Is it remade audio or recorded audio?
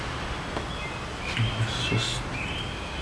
recorded